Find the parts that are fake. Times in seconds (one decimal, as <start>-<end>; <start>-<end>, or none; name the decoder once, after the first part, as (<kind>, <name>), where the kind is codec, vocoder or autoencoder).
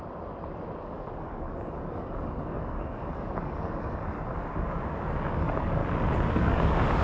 0.8-5.8 (codec, DAC); 6.3-7.0